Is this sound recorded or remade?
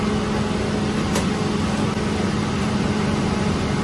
recorded